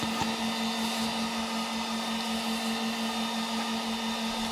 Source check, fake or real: real